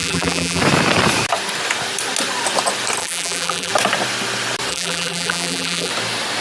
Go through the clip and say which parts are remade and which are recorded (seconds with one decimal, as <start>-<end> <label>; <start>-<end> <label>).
0.0-0.6 remade; 0.6-3.0 recorded; 3.0-3.7 remade; 3.7-4.7 recorded; 4.7-5.9 remade; 5.9-6.4 recorded